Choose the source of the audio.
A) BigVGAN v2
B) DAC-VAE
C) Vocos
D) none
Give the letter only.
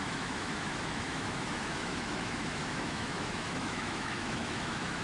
B